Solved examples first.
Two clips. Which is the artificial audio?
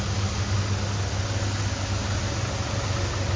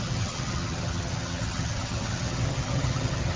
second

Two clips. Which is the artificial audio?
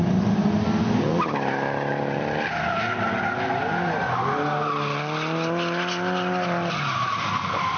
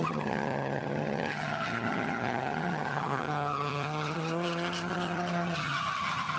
second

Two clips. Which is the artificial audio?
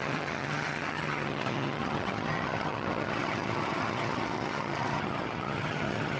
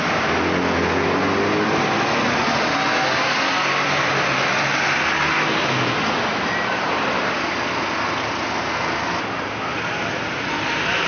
first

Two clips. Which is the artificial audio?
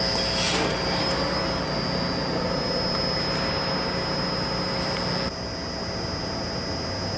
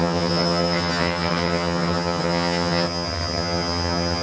second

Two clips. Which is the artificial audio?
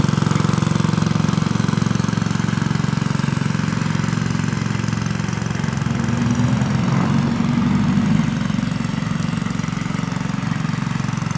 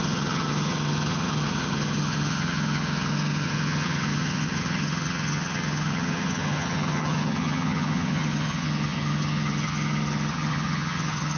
second